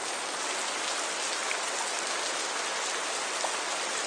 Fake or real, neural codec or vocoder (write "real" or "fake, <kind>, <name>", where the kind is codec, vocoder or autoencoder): real